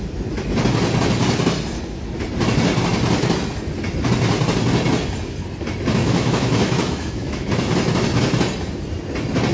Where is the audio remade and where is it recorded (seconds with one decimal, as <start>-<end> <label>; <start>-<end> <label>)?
0.0-6.0 recorded; 6.0-7.5 remade; 7.5-9.5 recorded